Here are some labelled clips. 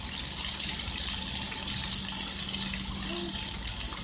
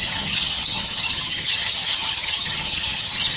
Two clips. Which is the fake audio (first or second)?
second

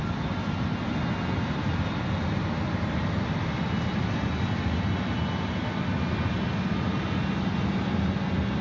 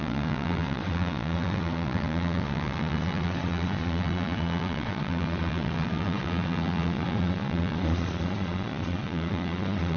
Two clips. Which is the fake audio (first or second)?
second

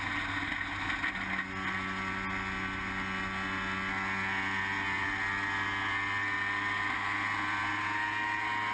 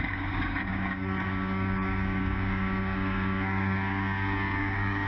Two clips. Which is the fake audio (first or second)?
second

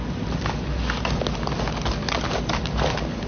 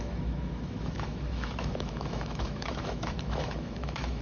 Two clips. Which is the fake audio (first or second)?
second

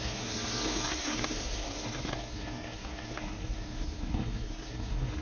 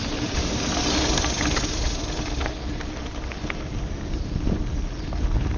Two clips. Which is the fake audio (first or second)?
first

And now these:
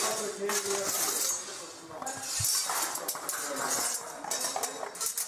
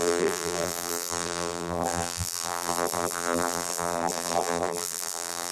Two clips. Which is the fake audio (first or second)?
second